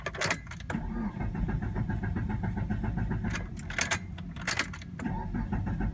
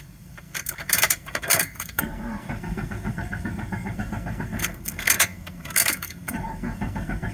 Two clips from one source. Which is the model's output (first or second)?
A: second